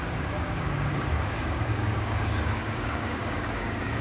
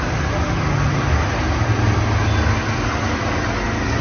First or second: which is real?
second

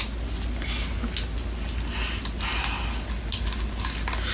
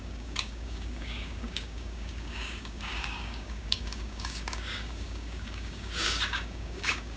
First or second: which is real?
first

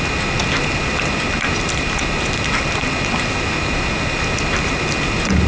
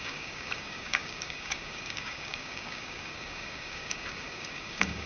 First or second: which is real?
first